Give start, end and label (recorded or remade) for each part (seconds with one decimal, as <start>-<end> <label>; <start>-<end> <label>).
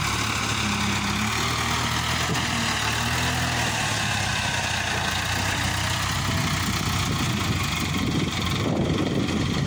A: 0.0-9.7 recorded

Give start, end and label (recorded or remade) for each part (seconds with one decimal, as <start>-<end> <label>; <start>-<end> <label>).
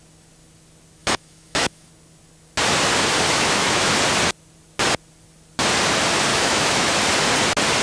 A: 0.0-1.0 recorded; 1.0-1.9 remade; 1.9-3.3 recorded; 3.3-3.9 remade; 3.9-6.3 recorded; 6.3-6.9 remade; 6.9-7.8 recorded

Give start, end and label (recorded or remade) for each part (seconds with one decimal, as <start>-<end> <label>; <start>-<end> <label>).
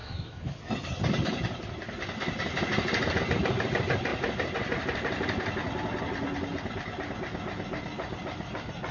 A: 0.0-0.6 remade; 0.6-8.9 recorded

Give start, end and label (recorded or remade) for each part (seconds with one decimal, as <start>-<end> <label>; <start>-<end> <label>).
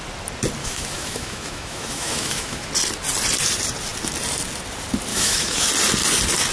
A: 0.0-0.6 recorded; 0.6-2.7 remade; 2.7-5.1 recorded; 5.1-5.7 remade; 5.7-6.5 recorded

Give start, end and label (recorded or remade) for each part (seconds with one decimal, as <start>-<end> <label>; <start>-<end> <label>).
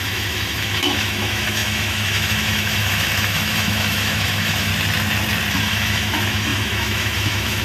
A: 0.0-4.7 remade; 4.7-5.5 recorded; 5.5-7.6 remade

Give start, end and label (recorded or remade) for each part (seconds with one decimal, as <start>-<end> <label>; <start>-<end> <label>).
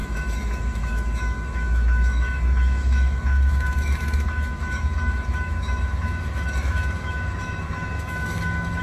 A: 0.0-8.8 remade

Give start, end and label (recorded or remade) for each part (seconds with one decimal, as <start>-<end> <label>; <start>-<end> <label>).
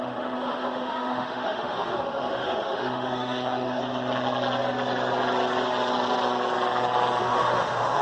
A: 0.0-3.8 remade; 3.8-7.2 recorded; 7.2-8.0 remade